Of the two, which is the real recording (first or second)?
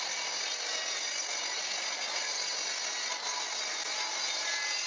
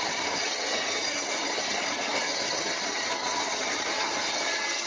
first